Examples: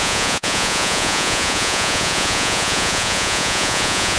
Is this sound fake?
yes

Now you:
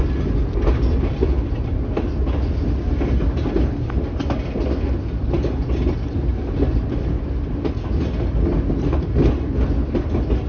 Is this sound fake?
no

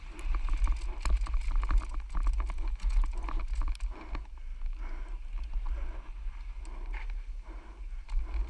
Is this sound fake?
no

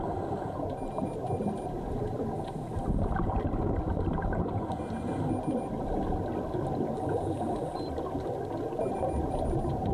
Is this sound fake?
no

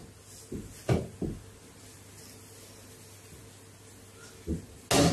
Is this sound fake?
no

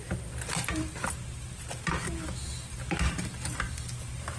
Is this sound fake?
no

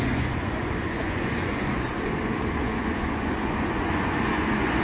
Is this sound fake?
yes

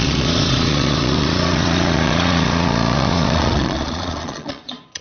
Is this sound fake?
yes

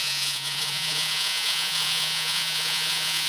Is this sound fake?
yes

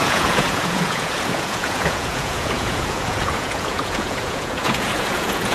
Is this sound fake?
yes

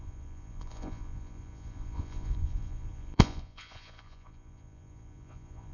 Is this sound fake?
yes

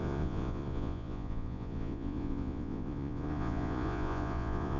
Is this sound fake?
yes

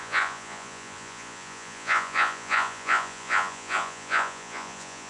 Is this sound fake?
yes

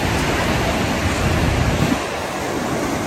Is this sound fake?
no